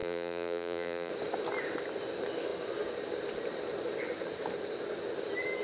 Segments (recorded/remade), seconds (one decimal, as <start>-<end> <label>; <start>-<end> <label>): 0.0-1.1 remade; 1.1-5.6 recorded